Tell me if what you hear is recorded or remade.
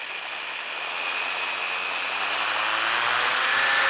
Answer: recorded